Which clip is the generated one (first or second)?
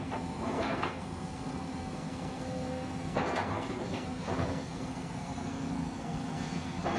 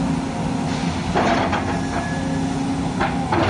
first